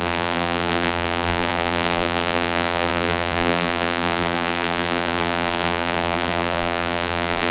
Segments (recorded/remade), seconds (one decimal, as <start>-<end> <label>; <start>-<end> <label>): 0.0-7.5 remade